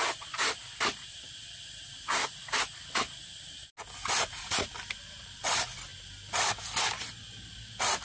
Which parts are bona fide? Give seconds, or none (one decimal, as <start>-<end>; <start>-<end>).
0.0-8.0